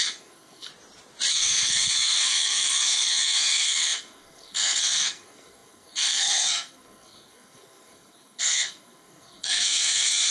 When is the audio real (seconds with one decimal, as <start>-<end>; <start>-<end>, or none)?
0.7-1.3